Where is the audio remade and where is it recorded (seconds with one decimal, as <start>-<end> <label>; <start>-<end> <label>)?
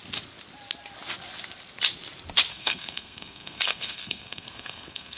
0.0-2.5 recorded; 2.5-5.2 remade